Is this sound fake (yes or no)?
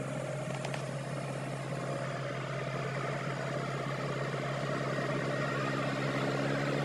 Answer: no